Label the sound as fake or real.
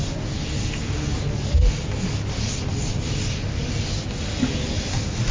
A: real